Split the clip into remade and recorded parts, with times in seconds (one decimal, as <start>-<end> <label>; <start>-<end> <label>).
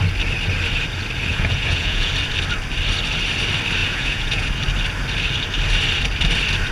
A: 0.0-1.3 recorded; 1.3-2.1 remade; 2.1-3.8 recorded; 3.8-4.5 remade; 4.5-6.7 recorded